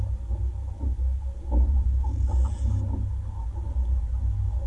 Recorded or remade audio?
recorded